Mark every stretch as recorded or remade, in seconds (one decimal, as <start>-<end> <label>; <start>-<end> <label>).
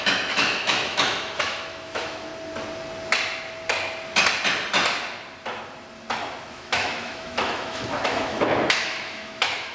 0.0-2.3 remade; 2.3-6.5 recorded; 6.5-9.7 remade